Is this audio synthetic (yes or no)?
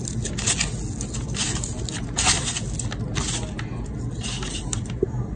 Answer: no